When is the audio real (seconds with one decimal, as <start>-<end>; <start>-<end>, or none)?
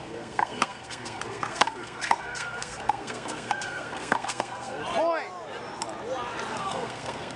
4.8-6.5